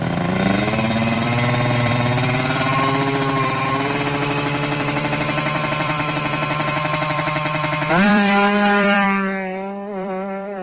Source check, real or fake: fake